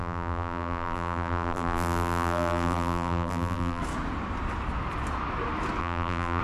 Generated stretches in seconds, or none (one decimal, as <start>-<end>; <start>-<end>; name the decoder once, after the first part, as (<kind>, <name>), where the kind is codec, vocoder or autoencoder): 0.0-3.8 (vocoder, BigVGAN v2); 5.8-6.4